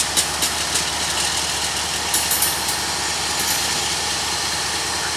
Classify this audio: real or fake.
real